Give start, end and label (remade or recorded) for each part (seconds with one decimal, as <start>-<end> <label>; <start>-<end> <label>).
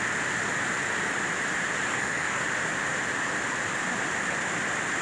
0.0-1.9 recorded; 1.9-2.4 remade; 2.4-5.0 recorded